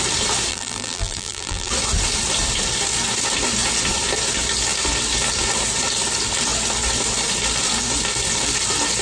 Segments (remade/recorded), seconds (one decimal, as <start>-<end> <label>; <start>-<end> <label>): 0.0-0.5 recorded; 0.5-1.7 remade; 1.7-9.0 recorded